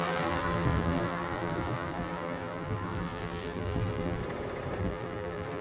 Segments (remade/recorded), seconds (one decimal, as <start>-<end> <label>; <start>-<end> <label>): 0.0-4.2 remade; 4.2-4.8 recorded; 4.8-5.6 remade